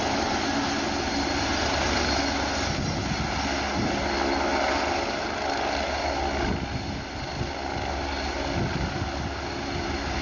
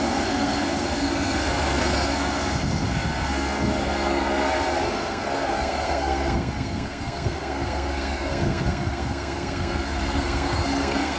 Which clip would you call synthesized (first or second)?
second